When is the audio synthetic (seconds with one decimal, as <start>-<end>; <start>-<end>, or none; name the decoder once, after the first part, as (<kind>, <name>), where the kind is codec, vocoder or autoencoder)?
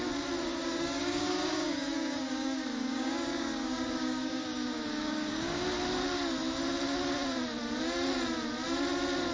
0.5-5.6 (codec, DAC)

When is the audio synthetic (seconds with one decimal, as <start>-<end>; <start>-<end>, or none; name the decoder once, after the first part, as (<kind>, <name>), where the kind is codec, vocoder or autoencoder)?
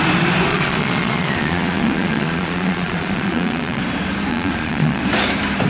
0.5-3.8 (vocoder, Vocos); 4.3-5.0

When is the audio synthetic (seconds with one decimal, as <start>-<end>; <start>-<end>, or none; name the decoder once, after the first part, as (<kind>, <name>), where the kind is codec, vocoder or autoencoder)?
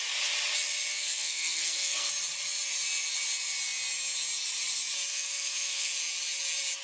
0.9-2.1 (codec, SNAC); 5.1-5.9